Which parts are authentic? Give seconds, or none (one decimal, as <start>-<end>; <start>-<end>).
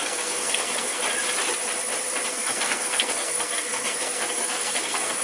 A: 1.0-2.3